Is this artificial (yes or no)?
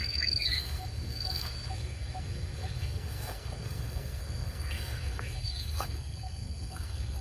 yes